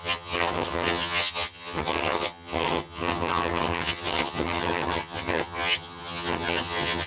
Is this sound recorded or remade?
remade